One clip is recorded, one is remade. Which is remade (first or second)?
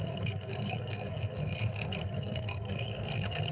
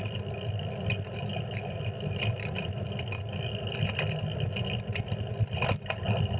first